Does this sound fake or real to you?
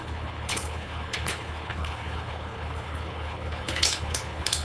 fake